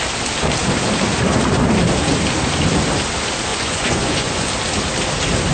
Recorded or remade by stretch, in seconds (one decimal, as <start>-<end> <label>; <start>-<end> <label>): 0.0-3.5 recorded; 3.5-4.5 remade; 4.5-5.5 recorded